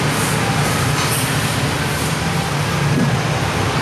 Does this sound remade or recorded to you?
recorded